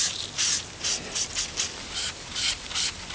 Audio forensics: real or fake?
real